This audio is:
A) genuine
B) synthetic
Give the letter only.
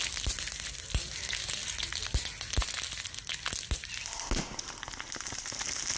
A